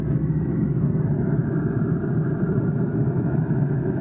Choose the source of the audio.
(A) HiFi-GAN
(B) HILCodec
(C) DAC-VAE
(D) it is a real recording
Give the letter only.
D